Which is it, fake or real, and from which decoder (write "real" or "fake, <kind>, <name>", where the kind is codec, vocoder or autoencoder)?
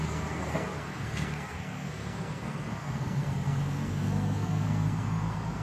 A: fake, codec, SNAC